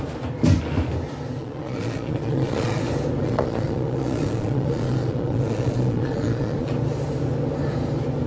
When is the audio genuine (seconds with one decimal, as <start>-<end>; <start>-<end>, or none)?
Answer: 0.0-1.4; 2.8-3.2; 6.7-8.3